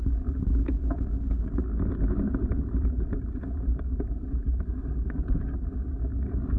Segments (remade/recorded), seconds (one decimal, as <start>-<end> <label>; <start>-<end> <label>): 0.0-0.6 remade; 0.6-1.9 recorded; 1.9-6.6 remade

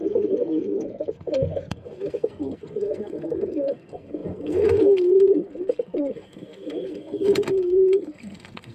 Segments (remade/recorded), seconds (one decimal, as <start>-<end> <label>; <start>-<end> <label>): 0.0-8.7 remade